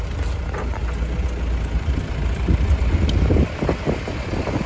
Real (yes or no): yes